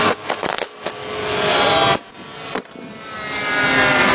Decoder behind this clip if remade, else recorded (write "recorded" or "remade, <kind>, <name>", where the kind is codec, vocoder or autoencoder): recorded